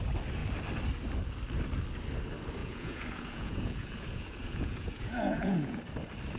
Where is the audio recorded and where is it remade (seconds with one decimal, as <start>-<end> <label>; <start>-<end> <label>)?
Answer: 0.0-2.6 recorded; 2.6-5.8 remade; 5.8-6.4 recorded